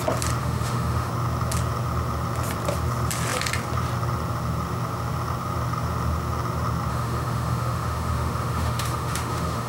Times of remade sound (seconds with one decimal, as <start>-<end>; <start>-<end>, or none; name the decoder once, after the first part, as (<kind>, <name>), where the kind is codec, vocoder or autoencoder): 0.4-1.1 (autoencoder, DAC-VAE); 6.9-9.7